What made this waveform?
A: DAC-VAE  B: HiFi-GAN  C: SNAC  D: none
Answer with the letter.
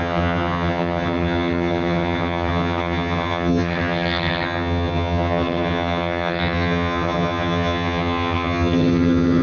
B